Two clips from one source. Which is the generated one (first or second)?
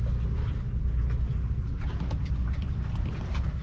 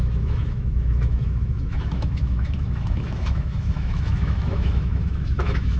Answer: second